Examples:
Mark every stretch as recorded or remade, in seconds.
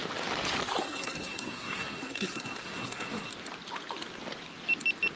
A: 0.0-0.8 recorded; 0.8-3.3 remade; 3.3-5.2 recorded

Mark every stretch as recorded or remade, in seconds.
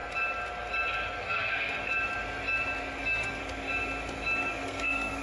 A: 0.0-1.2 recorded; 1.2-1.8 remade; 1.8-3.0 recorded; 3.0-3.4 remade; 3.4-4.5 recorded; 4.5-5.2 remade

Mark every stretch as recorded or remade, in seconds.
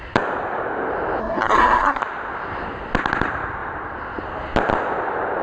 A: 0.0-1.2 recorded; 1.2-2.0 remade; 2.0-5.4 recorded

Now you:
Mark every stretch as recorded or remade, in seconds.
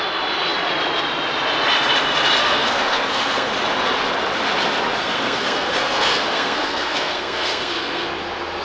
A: 0.0-2.4 recorded; 2.4-3.5 remade; 3.5-5.0 recorded; 5.0-8.1 remade; 8.1-8.6 recorded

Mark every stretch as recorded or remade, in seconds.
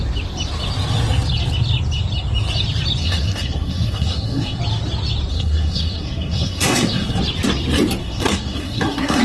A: 0.0-3.0 recorded; 3.0-4.6 remade; 4.6-5.3 recorded; 5.3-7.2 remade; 7.2-8.0 recorded; 8.0-9.2 remade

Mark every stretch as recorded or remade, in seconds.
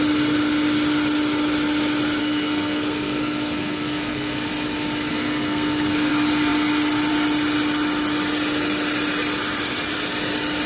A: 0.0-2.2 recorded; 2.2-4.5 remade; 4.5-5.1 recorded; 5.1-6.1 remade; 6.1-10.7 recorded